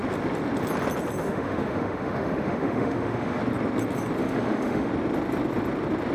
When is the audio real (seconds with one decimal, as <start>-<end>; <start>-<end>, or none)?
0.0-1.2; 3.4-4.2; 4.9-6.1